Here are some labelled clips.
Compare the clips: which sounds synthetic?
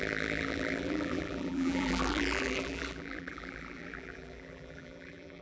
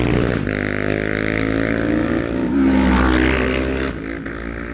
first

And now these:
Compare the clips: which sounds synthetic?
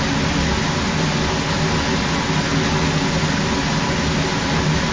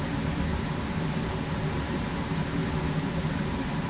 second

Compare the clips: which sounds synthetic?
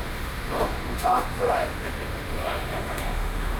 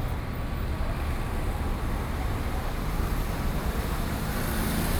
first